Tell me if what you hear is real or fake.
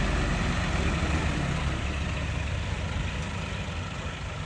real